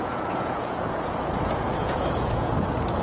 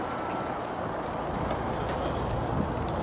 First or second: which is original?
second